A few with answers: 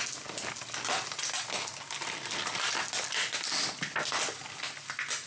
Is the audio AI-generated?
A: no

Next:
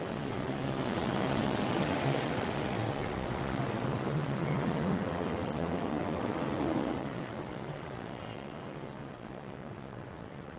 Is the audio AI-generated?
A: yes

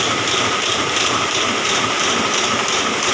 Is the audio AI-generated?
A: yes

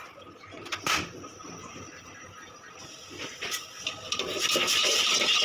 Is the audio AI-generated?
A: no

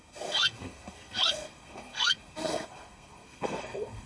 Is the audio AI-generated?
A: yes